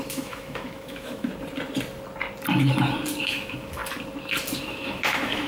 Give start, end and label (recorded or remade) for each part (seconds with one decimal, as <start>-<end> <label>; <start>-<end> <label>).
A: 0.0-1.3 remade; 1.3-3.2 recorded; 3.2-3.8 remade; 3.8-4.6 recorded; 4.6-5.5 remade